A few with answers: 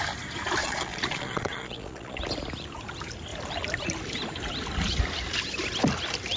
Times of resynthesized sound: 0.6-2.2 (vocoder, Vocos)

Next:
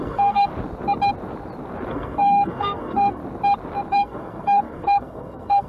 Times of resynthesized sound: 0.0-0.5 (codec, SNAC); 1.9-3.2; 3.9-5.7

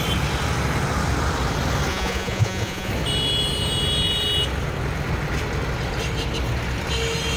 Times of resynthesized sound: 1.9-2.9 (vocoder, Vocos)

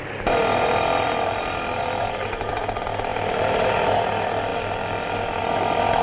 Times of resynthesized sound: 0.4-2.6 (vocoder, BigVGAN v2); 4.5-5.4

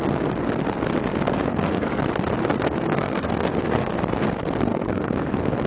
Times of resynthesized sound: 1.4-2.0 (codec, SNAC); 2.4-4.0; 4.7-5.2

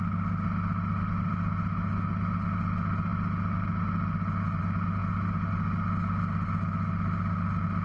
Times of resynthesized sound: none